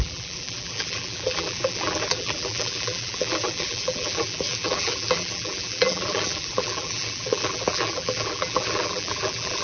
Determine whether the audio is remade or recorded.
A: remade